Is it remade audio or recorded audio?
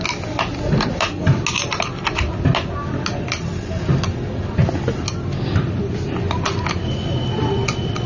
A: recorded